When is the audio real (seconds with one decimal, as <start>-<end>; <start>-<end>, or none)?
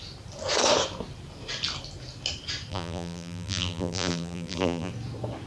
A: 0.0-2.7; 4.9-5.5